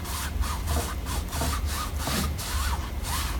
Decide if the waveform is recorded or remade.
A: recorded